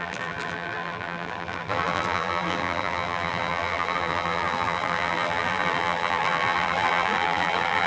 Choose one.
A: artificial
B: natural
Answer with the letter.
A